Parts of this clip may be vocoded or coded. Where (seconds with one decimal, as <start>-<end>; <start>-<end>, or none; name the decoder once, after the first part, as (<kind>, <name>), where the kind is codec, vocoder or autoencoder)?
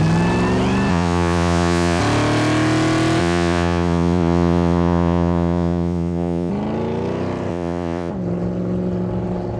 0.9-2.0 (vocoder, Vocos); 3.2-6.5; 7.5-8.1